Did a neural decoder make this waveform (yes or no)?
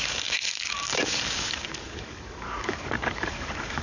yes